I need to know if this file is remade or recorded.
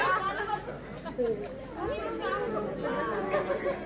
recorded